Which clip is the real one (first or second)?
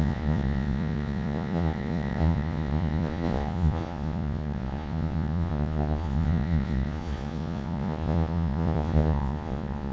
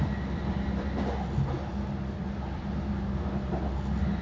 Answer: second